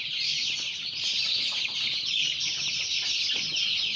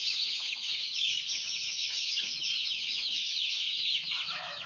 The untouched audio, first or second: first